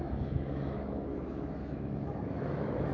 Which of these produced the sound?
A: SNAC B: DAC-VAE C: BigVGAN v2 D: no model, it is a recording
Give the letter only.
B